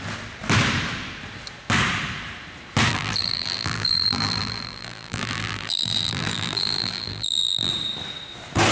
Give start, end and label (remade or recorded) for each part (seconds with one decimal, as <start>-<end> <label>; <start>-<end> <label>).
0.0-2.9 recorded; 2.9-7.7 remade; 7.7-8.7 recorded

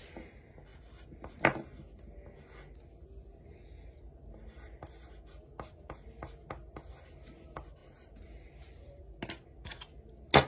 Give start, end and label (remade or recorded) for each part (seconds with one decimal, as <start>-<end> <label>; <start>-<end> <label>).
0.0-0.7 recorded; 0.7-1.3 remade; 1.3-7.8 recorded; 7.8-9.0 remade; 9.0-10.5 recorded

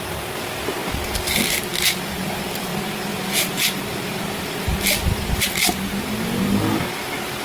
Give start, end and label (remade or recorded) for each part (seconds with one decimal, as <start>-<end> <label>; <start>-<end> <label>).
0.0-7.4 recorded

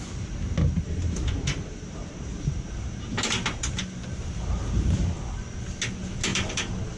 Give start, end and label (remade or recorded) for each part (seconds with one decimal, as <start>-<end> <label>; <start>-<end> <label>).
0.0-0.8 recorded; 0.8-5.0 remade; 5.0-6.3 recorded; 6.3-7.0 remade

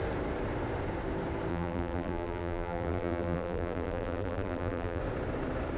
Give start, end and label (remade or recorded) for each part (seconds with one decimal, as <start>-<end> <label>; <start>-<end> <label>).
0.0-1.5 recorded; 1.5-5.0 remade; 5.0-5.8 recorded

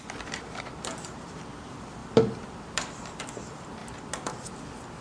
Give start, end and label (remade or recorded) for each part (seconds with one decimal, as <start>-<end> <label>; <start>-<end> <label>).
0.0-3.8 remade; 3.8-5.0 recorded

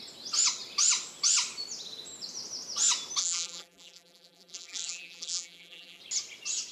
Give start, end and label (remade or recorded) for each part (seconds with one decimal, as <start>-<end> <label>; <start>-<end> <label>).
0.0-3.2 recorded; 3.2-6.0 remade; 6.0-6.7 recorded